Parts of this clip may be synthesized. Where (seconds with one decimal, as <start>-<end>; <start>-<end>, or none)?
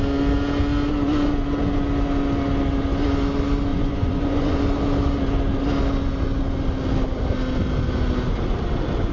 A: 3.7-4.6